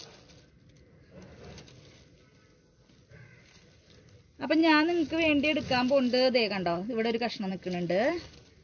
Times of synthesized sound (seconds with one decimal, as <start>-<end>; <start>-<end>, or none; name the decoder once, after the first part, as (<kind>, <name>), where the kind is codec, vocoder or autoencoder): none